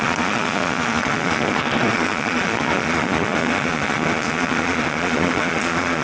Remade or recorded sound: remade